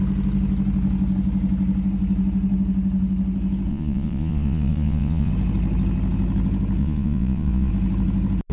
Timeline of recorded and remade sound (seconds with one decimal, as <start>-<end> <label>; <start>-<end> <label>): 0.0-3.7 recorded; 3.7-5.3 remade; 5.3-6.8 recorded; 6.8-7.7 remade; 7.7-8.5 recorded